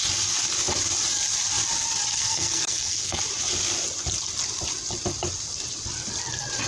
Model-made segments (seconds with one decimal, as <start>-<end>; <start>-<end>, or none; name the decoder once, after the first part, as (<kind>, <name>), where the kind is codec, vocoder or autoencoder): 2.1-3.2 (codec, SNAC)